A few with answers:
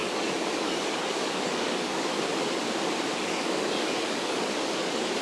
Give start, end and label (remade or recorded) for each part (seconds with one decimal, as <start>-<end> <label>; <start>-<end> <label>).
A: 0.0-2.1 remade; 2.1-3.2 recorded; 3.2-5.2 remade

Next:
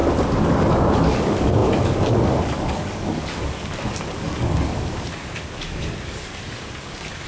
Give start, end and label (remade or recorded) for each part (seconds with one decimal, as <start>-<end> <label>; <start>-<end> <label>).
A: 0.0-0.5 recorded; 0.5-7.3 remade

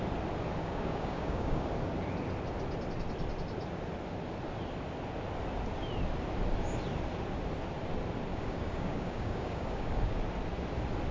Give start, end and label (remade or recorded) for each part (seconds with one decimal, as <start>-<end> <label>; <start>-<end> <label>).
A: 0.0-0.6 recorded; 0.6-1.7 remade; 1.7-8.3 recorded; 8.3-10.2 remade; 10.2-11.1 recorded

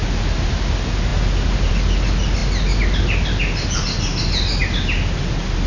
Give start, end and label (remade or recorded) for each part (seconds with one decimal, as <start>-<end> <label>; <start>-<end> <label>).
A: 0.0-5.7 recorded

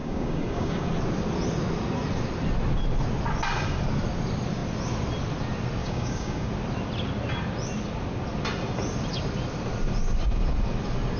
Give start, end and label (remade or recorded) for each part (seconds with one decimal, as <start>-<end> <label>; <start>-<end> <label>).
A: 0.0-0.9 remade; 0.9-5.8 recorded; 5.8-6.5 remade; 6.5-11.2 recorded

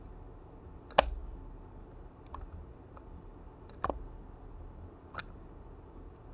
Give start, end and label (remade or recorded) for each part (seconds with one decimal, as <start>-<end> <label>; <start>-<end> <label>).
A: 0.0-6.3 recorded